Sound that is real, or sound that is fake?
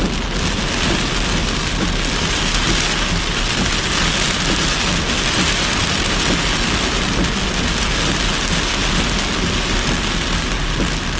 real